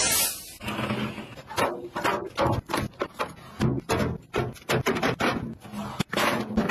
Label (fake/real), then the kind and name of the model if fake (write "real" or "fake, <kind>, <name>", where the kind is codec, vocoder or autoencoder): real